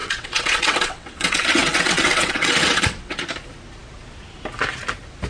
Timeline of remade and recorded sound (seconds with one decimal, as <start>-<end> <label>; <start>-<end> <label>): 0.0-3.2 remade; 3.2-5.3 recorded